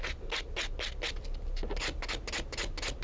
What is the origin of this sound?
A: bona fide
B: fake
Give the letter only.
A